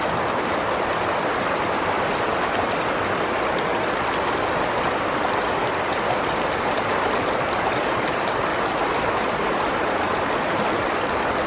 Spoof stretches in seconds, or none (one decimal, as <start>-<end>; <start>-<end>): 0.0-8.5; 11.0-11.5